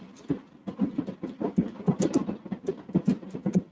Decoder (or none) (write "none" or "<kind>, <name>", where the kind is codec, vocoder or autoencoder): none